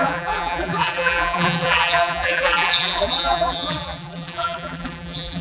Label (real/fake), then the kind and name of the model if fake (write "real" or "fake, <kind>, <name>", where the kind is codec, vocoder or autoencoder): fake, vocoder, BigVGAN v2